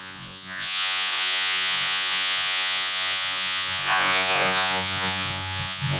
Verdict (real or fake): fake